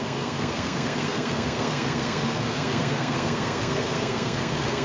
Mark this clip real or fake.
fake